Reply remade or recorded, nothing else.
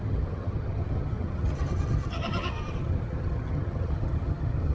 remade